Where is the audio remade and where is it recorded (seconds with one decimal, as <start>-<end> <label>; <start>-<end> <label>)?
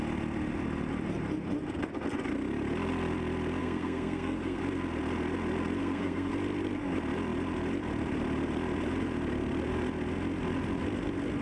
0.0-3.6 recorded; 3.6-4.6 remade; 4.6-5.8 recorded; 5.8-6.3 remade; 6.3-11.4 recorded